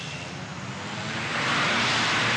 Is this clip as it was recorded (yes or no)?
yes